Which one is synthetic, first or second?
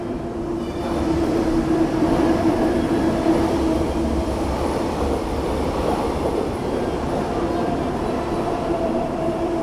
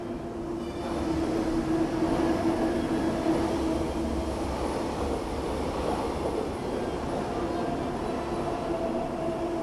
first